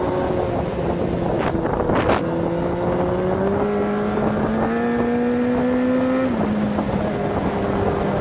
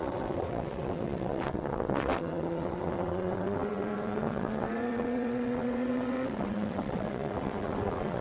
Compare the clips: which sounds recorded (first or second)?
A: first